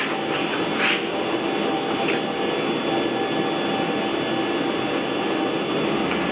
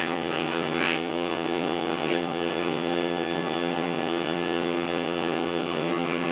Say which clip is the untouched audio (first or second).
first